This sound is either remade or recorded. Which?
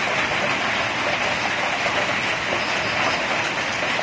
recorded